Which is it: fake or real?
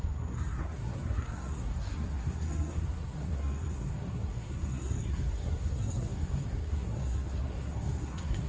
fake